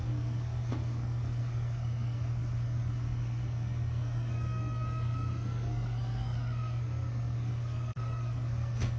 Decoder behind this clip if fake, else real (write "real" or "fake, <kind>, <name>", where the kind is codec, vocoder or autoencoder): fake, codec, SNAC